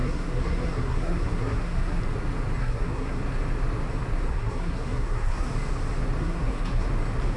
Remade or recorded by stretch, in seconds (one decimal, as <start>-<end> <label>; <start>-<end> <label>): 0.0-2.0 remade; 2.0-2.6 recorded; 2.6-3.2 remade; 3.2-4.3 recorded; 4.3-5.5 remade; 5.5-6.2 recorded; 6.2-6.9 remade; 6.9-7.4 recorded

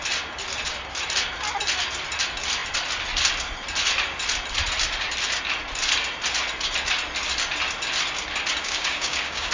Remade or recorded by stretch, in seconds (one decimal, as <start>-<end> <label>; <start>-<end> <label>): 0.0-8.6 recorded; 8.6-9.5 remade